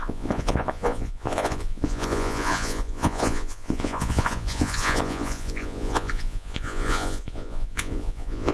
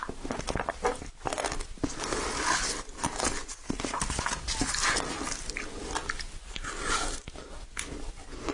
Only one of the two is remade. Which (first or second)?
first